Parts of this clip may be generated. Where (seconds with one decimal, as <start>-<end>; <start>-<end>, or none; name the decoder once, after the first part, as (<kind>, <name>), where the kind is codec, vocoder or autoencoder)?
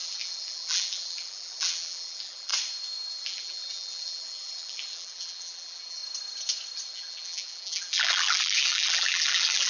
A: 0.0-2.5 (vocoder, BigVGAN v2); 3.1-6.0; 6.9-9.7